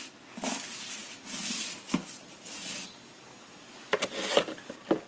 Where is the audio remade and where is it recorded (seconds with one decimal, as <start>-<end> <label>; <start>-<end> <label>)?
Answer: 0.0-5.1 recorded